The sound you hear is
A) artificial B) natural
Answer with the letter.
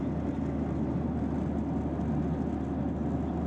B